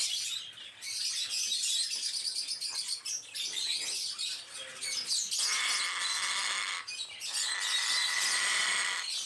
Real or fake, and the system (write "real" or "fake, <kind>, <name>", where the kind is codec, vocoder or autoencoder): real